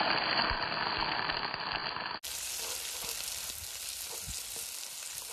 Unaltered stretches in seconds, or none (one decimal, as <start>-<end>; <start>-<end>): 0.0-5.3